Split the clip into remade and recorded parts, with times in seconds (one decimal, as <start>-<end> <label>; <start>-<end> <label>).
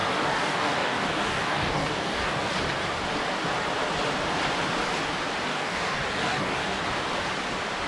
0.0-2.5 remade; 2.5-5.5 recorded; 5.5-6.8 remade; 6.8-7.9 recorded